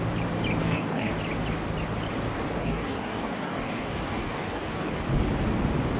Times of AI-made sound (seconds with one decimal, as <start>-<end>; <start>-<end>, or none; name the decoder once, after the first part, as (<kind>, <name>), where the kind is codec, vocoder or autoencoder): 0.6-1.1 (codec, DAC); 2.6-5.0